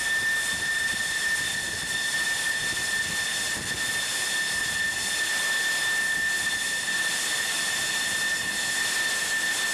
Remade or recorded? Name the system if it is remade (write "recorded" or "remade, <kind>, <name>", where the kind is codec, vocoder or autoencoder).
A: recorded